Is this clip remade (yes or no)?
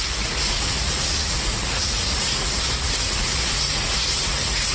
yes